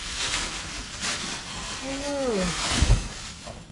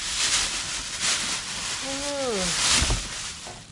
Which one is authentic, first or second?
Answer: second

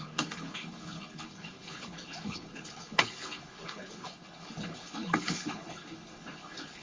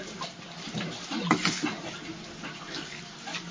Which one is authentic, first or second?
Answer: second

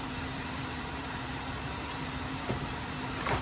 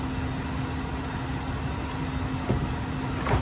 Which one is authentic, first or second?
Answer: second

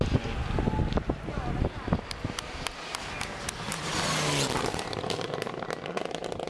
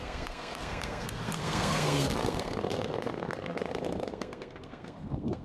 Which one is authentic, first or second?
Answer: first